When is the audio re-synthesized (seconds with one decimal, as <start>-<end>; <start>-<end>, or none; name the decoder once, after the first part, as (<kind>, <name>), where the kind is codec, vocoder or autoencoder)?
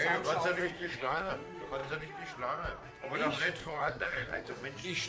0.6-1.3 (codec, SNAC); 3.6-4.5